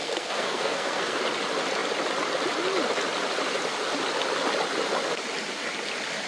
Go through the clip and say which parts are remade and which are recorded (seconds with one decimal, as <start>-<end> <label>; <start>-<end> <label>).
0.0-1.2 remade; 1.2-6.3 recorded